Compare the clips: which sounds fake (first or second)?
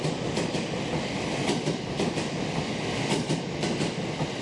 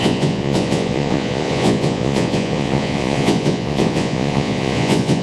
second